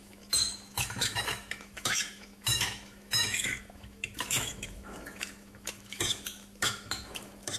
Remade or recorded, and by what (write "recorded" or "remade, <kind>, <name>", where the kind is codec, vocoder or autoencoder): remade, autoencoder, DAC-VAE